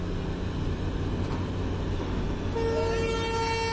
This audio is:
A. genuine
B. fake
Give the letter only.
A